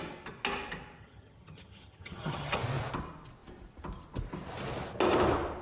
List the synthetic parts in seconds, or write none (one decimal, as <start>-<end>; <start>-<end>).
1.0-2.6